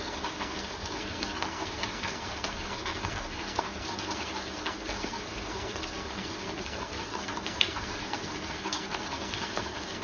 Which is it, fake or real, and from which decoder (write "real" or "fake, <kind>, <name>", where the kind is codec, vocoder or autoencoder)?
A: fake, codec, SNAC